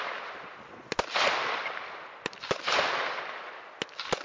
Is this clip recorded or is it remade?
recorded